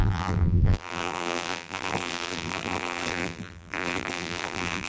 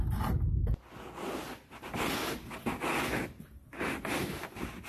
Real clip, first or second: second